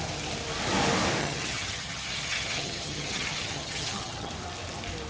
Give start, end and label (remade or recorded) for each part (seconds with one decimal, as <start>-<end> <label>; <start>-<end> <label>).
0.0-1.2 recorded; 1.2-4.3 remade; 4.3-5.1 recorded